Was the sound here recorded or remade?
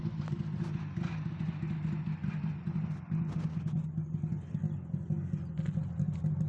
recorded